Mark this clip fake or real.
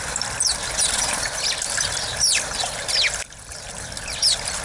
real